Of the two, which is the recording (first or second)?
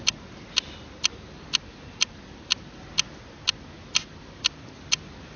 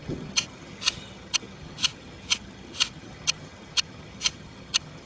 first